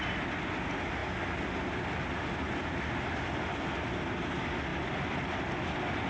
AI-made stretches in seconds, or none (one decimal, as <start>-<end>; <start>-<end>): none